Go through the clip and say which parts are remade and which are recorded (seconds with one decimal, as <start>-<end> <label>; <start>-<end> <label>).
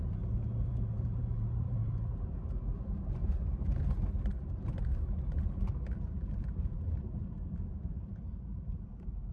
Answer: 0.0-9.3 remade